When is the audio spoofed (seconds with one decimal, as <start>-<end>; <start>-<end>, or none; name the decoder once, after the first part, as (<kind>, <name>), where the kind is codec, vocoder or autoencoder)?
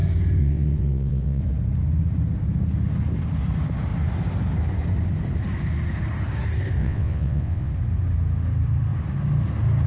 0.4-1.4 (vocoder, WaveNeXt); 6.8-7.7